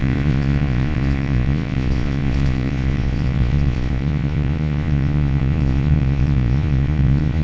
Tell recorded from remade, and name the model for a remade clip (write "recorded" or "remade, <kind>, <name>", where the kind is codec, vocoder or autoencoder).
remade, vocoder, Vocos